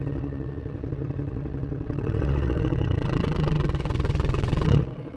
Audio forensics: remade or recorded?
remade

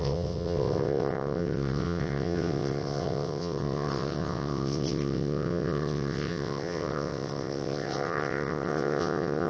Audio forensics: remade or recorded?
remade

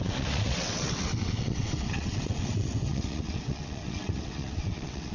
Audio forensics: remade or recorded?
remade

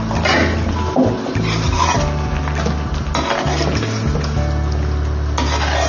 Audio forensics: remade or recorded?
recorded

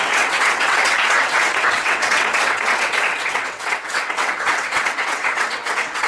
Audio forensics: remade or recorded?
remade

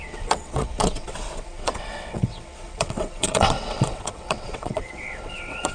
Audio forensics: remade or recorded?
remade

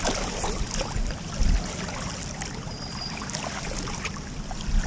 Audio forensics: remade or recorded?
recorded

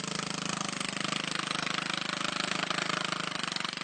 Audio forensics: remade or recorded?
recorded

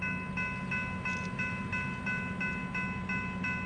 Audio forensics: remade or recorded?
recorded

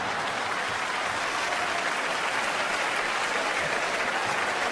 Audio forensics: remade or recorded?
recorded